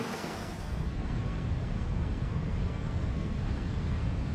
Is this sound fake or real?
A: fake